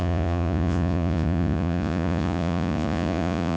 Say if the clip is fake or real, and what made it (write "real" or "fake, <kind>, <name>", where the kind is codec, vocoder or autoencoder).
fake, vocoder, Vocos